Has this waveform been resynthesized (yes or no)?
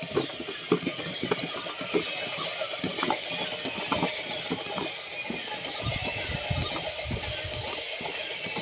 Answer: no